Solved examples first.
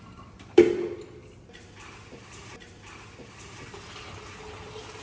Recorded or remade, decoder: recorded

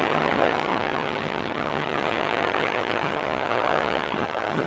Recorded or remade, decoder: remade, vocoder, HiFi-GAN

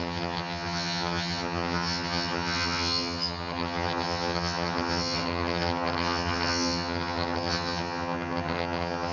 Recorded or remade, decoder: remade, vocoder, HiFi-GAN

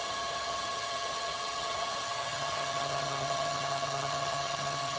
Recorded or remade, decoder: remade, vocoder, HiFi-GAN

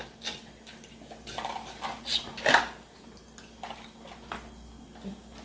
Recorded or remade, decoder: recorded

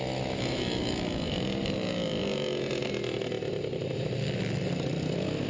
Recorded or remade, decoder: recorded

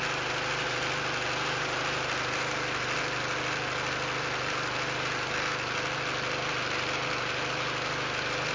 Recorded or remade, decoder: recorded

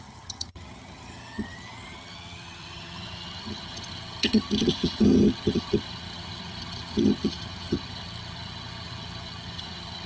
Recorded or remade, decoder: remade, vocoder, HiFi-GAN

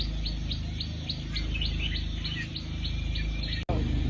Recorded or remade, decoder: recorded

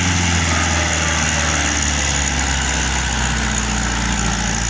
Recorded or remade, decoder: recorded